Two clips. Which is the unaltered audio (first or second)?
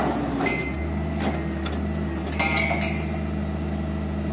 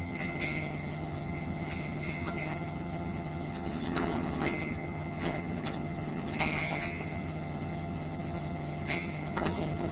first